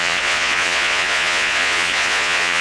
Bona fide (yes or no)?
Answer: no